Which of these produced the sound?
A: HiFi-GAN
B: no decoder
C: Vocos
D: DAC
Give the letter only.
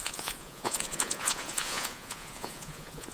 C